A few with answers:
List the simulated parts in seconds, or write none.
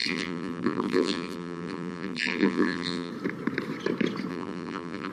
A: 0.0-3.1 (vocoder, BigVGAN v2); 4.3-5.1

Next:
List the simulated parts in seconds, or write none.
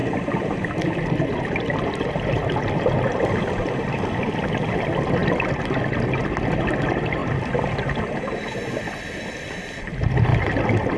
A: 0.0-0.7 (vocoder, BigVGAN v2)